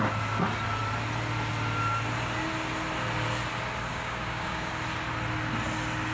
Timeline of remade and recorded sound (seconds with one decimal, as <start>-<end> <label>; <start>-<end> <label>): 0.0-3.9 recorded; 3.9-4.7 remade; 4.7-6.1 recorded